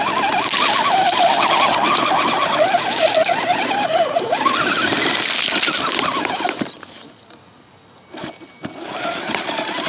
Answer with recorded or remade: recorded